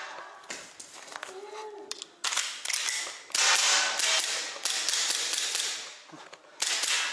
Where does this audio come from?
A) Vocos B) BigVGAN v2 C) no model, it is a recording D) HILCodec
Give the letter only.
C